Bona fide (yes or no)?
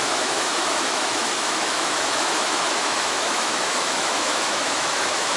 no